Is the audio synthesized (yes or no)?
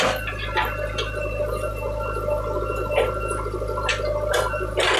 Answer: no